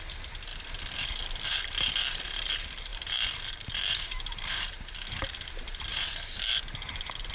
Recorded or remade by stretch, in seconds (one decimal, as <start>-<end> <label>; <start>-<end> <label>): 0.0-0.5 recorded; 0.5-2.5 remade; 2.5-2.9 recorded; 2.9-4.9 remade; 4.9-5.9 recorded; 5.9-6.5 remade; 6.5-7.3 recorded